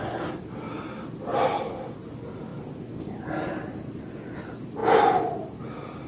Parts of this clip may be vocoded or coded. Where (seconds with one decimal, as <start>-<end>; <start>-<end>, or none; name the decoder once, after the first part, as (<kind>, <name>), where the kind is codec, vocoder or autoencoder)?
none